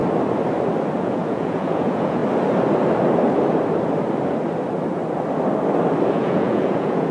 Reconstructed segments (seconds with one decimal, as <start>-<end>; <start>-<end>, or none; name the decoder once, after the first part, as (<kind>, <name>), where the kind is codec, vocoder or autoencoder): 1.0-2.2 (vocoder, Vocos); 6.1-7.1